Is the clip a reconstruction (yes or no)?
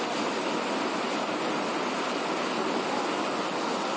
no